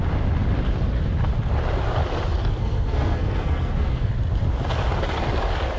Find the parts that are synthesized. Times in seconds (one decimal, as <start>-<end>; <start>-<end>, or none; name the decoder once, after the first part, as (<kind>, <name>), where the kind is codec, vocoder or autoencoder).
2.6-4.1 (codec, SNAC)